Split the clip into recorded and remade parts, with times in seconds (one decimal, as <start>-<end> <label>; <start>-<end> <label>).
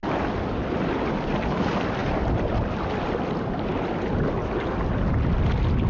0.0-5.9 recorded